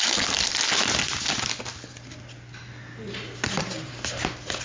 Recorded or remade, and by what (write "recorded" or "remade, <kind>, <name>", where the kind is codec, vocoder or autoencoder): recorded